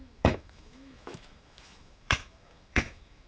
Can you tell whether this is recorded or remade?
remade